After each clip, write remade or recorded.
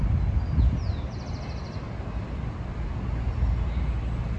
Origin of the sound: recorded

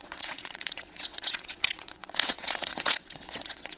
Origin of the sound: remade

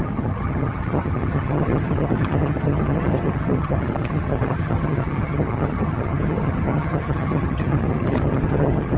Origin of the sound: remade